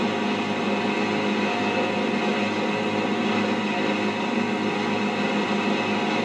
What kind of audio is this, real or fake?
real